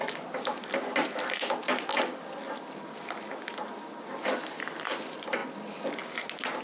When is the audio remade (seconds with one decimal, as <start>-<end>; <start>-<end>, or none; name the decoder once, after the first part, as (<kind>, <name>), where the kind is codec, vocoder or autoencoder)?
none